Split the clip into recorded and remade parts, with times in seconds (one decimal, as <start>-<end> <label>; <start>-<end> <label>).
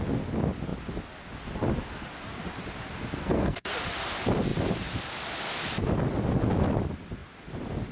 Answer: 0.0-3.2 recorded; 3.2-3.7 remade; 3.7-7.9 recorded